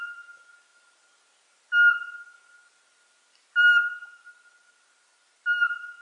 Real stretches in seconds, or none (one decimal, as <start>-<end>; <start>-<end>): 0.0-6.0